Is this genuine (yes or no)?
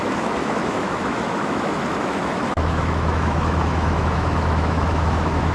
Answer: no